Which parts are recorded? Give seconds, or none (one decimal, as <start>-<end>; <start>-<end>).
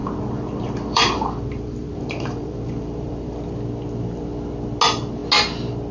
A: 3.5-5.9